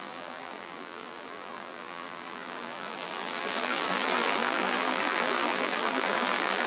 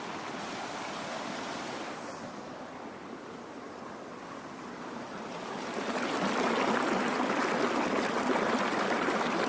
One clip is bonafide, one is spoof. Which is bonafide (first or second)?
second